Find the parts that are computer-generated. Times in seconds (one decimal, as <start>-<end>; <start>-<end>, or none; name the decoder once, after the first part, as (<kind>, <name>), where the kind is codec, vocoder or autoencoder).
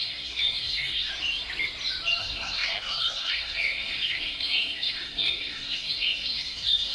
0.0-1.1 (codec, SNAC); 2.2-6.9